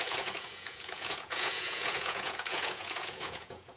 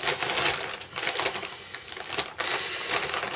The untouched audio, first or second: second